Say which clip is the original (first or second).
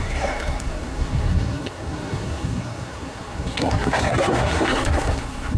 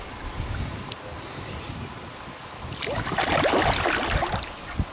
second